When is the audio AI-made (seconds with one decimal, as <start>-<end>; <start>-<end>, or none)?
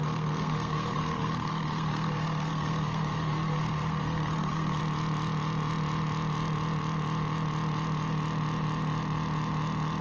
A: 0.0-4.8